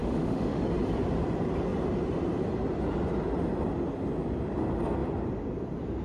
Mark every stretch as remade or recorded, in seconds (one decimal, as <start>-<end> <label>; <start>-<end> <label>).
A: 0.0-0.6 remade; 0.6-6.0 recorded